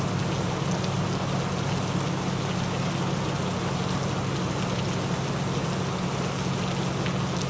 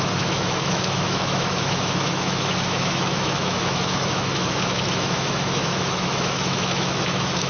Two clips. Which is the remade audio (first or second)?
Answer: second